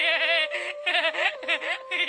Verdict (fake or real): real